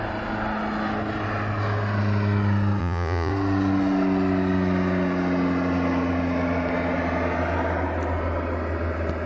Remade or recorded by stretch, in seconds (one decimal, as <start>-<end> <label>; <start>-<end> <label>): 0.0-2.8 recorded; 2.8-3.3 remade; 3.3-9.3 recorded